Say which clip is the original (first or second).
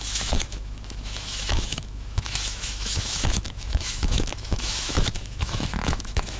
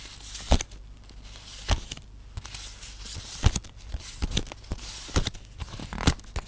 second